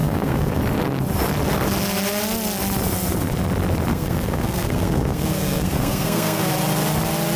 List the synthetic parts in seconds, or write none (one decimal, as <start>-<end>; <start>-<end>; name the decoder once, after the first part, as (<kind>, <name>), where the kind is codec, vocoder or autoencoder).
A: 0.0-0.6 (codec, SNAC); 3.9-6.5